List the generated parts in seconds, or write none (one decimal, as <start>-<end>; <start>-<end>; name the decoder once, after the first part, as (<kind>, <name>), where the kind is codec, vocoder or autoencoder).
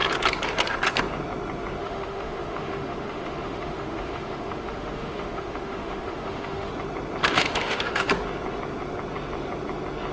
1.8-6.7 (autoencoder, DAC-VAE); 7.2-8.1